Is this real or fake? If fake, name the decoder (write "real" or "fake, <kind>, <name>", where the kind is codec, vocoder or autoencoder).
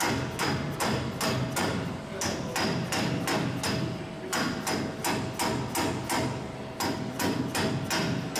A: real